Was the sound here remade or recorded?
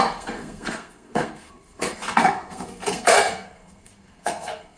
remade